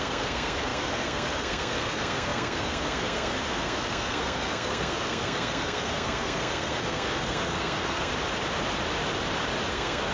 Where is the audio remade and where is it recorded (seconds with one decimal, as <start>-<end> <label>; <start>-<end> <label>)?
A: 0.0-8.1 remade; 8.1-9.7 recorded; 9.7-10.1 remade